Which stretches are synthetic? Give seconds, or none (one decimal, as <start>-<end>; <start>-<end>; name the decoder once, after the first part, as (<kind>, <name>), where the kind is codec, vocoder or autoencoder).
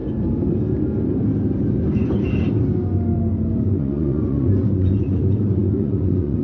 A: 3.6-6.4 (vocoder, Vocos)